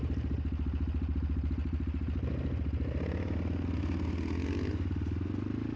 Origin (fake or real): real